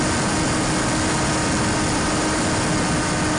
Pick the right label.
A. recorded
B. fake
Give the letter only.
A